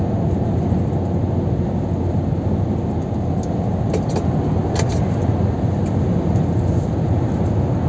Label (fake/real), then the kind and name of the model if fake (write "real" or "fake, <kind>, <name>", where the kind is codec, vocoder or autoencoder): real